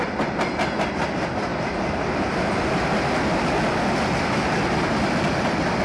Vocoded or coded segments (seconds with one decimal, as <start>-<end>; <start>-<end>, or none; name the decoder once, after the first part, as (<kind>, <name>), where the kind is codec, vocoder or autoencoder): none